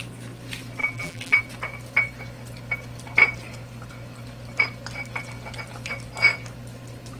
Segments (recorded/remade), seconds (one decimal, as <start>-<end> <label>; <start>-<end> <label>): 0.0-0.8 recorded; 0.8-1.4 remade; 1.4-7.2 recorded